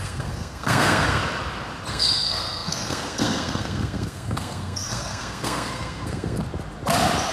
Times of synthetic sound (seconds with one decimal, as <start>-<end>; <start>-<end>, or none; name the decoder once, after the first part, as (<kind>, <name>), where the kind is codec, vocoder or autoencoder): 0.0-1.2 (codec, SNAC); 1.9-6.4